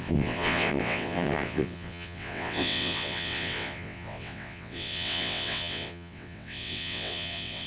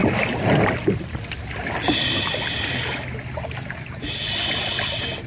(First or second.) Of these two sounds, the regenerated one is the first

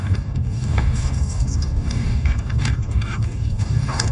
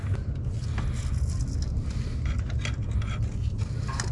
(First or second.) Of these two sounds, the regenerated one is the first